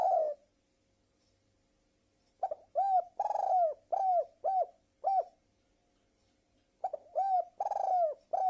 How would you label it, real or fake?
real